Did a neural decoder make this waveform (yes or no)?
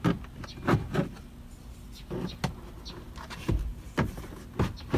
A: no